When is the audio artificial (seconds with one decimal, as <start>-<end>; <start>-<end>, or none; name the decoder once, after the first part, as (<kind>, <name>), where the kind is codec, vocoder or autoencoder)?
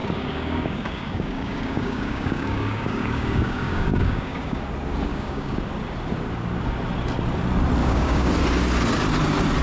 0.0-4.6 (codec, DAC); 5.1-5.6; 7.8-8.3